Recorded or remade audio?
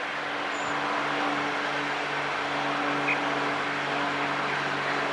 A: recorded